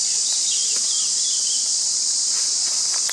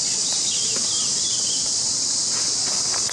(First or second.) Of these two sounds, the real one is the second